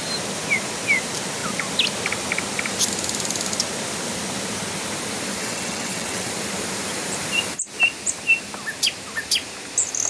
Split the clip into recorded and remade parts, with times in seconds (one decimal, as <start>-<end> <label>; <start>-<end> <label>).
0.0-5.4 recorded; 5.4-6.3 remade; 6.3-10.1 recorded